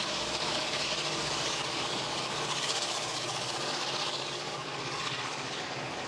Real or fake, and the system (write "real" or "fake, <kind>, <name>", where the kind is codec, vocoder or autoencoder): fake, codec, DAC